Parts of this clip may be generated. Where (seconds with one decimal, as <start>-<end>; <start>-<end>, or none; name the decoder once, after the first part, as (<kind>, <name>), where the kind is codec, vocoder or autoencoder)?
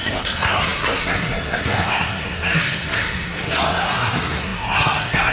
0.0-5.3 (codec, SNAC)